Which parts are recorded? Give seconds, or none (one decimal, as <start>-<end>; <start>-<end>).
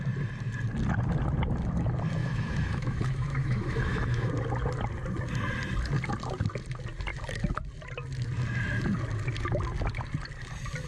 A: 0.0-2.2; 4.3-10.9